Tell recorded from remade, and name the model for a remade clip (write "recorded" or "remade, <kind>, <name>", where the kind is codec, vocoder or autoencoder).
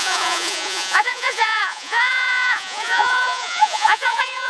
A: remade, vocoder, Vocos